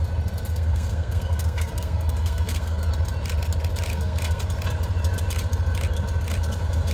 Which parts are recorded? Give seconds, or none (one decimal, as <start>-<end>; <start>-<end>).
0.0-0.5; 2.9-3.9; 4.4-6.9